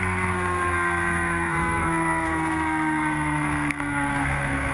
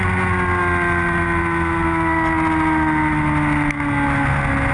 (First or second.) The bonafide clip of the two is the second